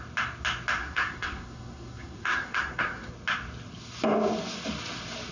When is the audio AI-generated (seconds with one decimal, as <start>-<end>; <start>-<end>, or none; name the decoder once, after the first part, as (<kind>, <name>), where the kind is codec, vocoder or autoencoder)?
0.8-3.1 (codec, SNAC)